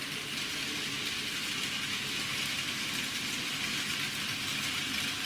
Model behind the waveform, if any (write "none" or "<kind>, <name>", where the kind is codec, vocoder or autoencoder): none